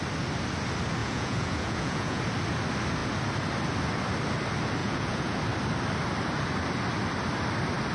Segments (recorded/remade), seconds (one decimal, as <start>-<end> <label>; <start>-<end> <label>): 0.0-1.0 recorded; 1.0-2.2 remade; 2.2-4.8 recorded; 4.8-5.4 remade; 5.4-7.9 recorded